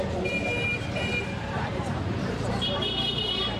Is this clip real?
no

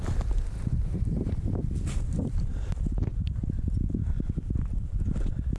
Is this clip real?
no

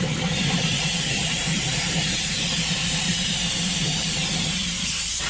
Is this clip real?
no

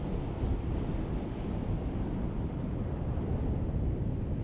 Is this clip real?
yes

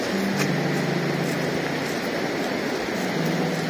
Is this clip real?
yes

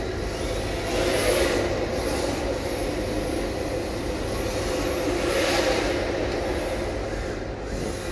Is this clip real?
yes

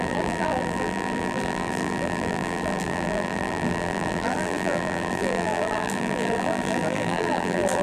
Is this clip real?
no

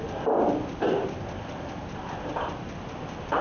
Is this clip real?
no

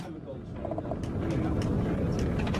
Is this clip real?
yes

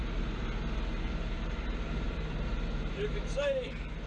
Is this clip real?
no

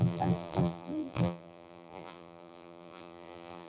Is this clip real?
no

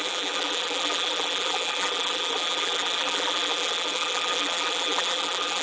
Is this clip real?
no